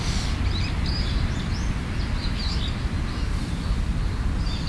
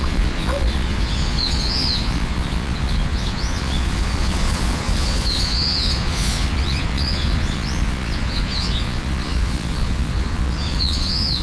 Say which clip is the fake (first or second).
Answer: second